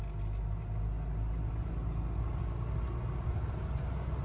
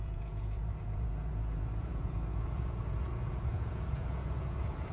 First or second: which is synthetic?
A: second